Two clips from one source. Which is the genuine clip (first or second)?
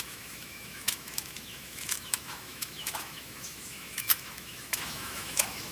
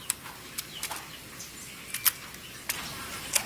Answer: second